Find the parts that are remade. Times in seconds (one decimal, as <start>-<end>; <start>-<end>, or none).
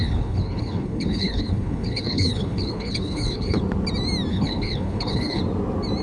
0.0-3.6; 4.3-5.4